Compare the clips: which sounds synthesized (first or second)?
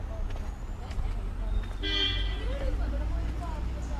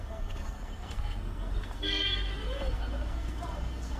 second